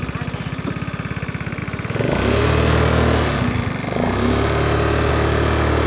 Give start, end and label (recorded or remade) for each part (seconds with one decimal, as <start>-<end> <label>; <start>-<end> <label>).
0.0-5.9 recorded